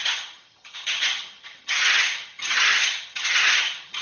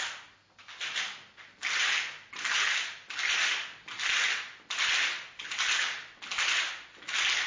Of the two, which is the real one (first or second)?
second